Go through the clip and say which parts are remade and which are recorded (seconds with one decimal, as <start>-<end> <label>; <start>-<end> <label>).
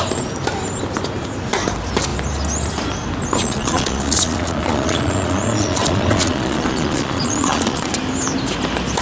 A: 0.0-3.4 recorded; 3.4-7.9 remade; 7.9-9.0 recorded